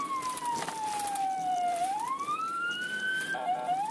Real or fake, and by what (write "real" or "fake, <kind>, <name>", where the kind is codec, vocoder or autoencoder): fake, vocoder, BigVGAN v2